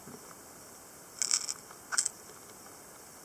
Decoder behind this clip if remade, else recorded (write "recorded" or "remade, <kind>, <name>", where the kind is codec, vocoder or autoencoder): recorded